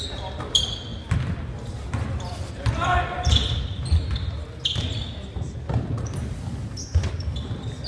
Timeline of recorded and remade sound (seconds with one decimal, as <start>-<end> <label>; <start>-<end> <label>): 0.0-7.9 recorded